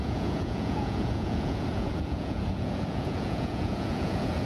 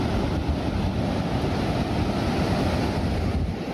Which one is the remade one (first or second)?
first